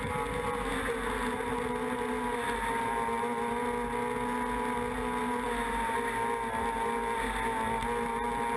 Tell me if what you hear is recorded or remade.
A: recorded